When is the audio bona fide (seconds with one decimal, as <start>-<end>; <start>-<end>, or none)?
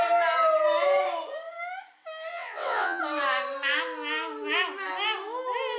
0.0-2.3; 3.0-5.8